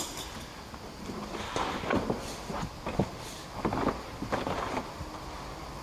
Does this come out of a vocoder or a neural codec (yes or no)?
no